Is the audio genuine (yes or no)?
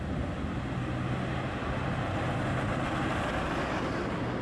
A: yes